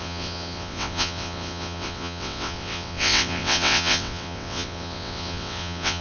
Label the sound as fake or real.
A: fake